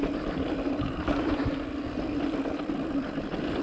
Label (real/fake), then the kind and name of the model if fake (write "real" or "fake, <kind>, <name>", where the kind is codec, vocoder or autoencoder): fake, vocoder, BigVGAN v2